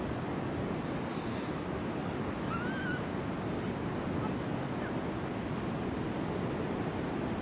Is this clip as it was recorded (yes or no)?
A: yes